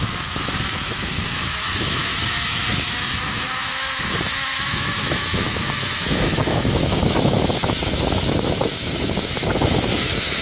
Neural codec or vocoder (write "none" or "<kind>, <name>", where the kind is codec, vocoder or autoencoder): autoencoder, DAC-VAE